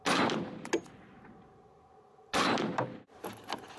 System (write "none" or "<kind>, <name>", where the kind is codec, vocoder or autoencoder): none